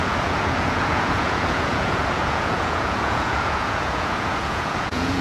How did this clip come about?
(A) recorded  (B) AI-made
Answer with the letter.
B